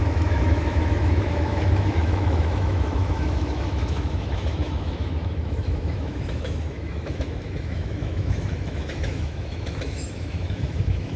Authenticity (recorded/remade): remade